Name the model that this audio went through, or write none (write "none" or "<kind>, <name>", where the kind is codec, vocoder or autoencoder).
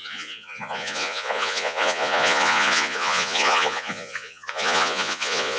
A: vocoder, Vocos